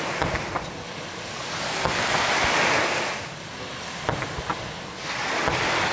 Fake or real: real